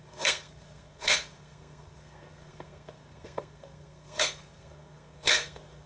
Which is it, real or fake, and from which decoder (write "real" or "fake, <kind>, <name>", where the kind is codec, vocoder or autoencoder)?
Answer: fake, codec, SNAC